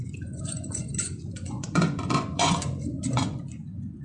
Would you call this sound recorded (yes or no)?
no